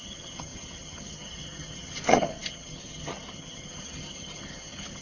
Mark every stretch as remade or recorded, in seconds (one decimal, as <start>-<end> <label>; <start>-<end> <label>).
0.0-5.0 remade